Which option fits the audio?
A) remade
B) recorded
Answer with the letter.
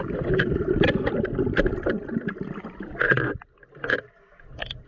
A